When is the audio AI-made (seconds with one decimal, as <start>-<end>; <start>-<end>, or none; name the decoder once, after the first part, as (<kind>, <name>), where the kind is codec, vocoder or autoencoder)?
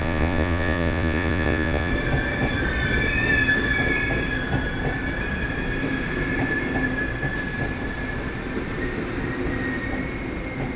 0.0-1.9 (vocoder, Vocos)